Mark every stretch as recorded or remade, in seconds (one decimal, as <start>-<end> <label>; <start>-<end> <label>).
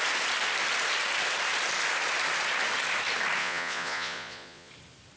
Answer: 0.0-3.4 recorded; 3.4-4.7 remade; 4.7-5.2 recorded